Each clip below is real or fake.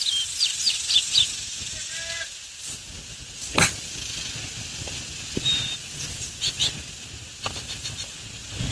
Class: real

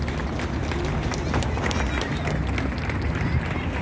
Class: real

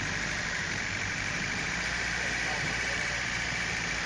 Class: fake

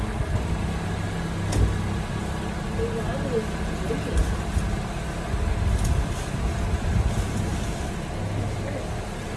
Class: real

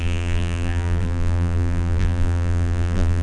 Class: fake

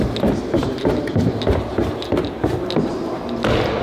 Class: real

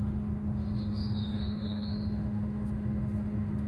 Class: fake